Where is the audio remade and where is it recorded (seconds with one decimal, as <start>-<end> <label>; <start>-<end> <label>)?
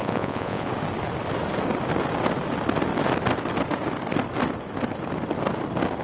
0.0-0.7 remade; 0.7-6.0 recorded